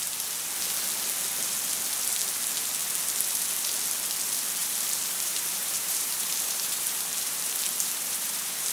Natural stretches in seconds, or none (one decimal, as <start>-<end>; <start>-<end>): 0.0-4.6